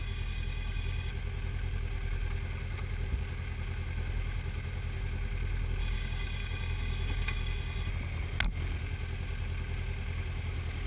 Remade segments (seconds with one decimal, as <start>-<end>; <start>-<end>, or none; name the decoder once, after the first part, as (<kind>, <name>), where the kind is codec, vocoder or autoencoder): 0.0-1.1 (codec, DAC); 5.8-7.9

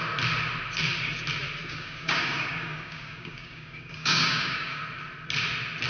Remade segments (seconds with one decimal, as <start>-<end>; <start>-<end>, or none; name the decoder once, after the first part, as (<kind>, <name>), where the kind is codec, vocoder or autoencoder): 1.6-4.8 (codec, DAC)

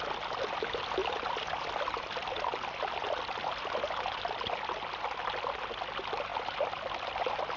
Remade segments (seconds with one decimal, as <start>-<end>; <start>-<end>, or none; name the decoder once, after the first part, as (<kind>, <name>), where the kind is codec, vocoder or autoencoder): none

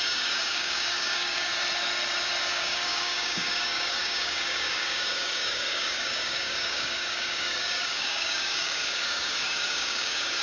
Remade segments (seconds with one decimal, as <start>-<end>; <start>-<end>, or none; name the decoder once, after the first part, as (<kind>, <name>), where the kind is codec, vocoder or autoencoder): 0.0-1.5 (codec, DAC); 2.5-10.4